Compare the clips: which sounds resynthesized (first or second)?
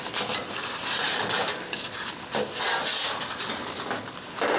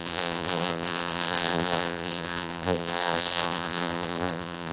second